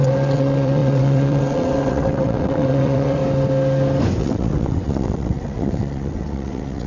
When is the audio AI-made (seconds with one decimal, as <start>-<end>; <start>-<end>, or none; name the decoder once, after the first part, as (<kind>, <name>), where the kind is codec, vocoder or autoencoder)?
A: 0.0-3.2 (vocoder, WaveNeXt); 4.2-6.9